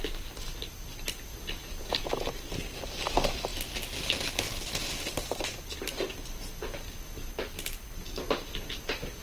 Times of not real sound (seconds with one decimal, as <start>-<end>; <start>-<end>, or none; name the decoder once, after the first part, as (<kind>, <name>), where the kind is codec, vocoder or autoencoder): none

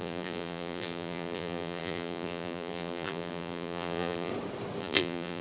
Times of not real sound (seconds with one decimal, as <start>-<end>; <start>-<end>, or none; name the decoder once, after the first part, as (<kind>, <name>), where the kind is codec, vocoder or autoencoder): 0.0-4.3 (vocoder, BigVGAN v2); 4.8-5.4

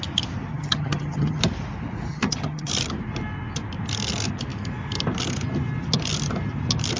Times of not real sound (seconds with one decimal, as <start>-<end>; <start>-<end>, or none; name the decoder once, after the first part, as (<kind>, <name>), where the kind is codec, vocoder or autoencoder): 0.5-1.4 (vocoder, HiFi-GAN); 2.1-2.7

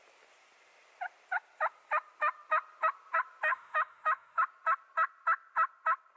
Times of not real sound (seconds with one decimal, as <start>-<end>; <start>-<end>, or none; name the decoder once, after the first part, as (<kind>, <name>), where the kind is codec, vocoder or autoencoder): 3.5-4.4 (autoencoder, DAC-VAE)